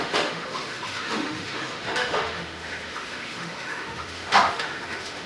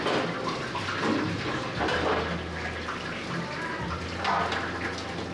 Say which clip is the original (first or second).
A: second